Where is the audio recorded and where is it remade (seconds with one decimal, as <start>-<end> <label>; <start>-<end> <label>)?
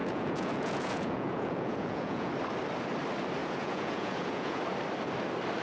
0.0-2.3 remade; 2.3-3.4 recorded; 3.4-4.6 remade; 4.6-5.6 recorded